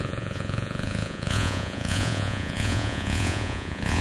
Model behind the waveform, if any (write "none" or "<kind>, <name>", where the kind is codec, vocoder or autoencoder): vocoder, Vocos